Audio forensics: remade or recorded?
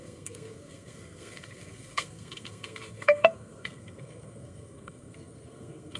remade